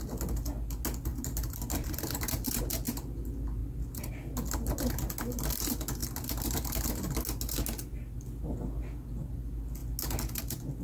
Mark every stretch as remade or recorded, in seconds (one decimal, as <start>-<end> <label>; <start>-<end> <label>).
0.0-1.1 recorded; 1.1-2.6 remade; 2.6-10.8 recorded